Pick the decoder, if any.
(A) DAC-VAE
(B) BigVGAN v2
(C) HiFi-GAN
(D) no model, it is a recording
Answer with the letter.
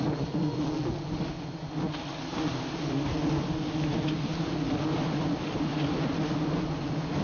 D